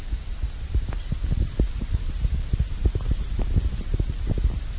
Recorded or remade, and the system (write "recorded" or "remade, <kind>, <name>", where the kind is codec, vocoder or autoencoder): recorded